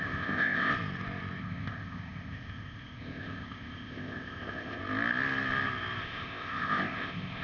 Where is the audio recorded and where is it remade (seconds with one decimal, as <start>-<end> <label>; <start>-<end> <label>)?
0.0-0.7 remade; 0.7-1.4 recorded; 1.4-4.8 remade; 4.8-6.0 recorded; 6.0-7.4 remade